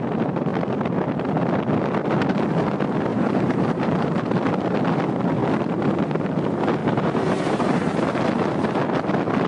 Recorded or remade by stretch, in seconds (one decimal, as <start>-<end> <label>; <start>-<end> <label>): 0.0-3.1 recorded; 3.1-4.5 remade; 4.5-6.8 recorded; 6.8-8.2 remade; 8.2-9.5 recorded